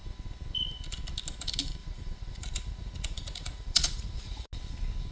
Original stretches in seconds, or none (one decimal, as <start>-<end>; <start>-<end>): 0.0-1.8; 4.5-5.1